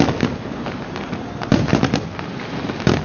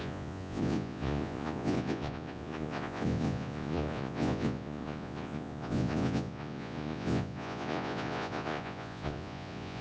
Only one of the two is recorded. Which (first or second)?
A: first